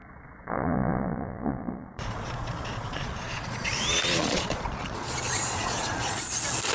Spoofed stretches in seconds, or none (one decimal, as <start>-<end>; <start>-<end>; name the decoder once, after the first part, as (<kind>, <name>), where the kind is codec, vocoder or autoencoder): 0.0-3.7 (vocoder, Vocos); 4.2-6.3